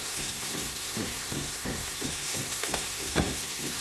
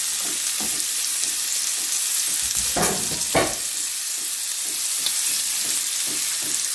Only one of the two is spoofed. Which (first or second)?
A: first